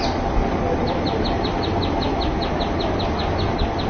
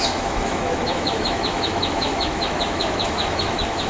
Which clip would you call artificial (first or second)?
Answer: second